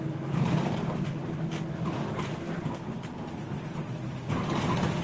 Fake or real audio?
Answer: real